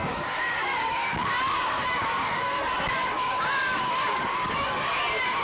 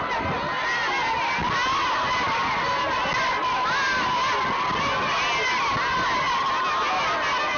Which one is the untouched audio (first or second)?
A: second